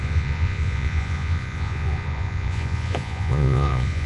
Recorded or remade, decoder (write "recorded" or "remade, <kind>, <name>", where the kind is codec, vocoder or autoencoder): remade, vocoder, Vocos